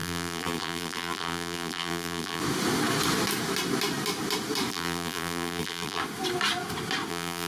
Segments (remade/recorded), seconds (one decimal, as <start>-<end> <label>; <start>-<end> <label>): 0.0-2.4 remade; 2.4-4.7 recorded; 4.7-6.0 remade; 6.0-7.1 recorded; 7.1-7.5 remade